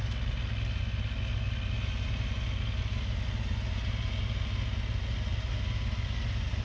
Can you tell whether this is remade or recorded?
recorded